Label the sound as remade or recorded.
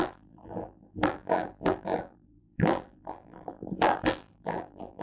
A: remade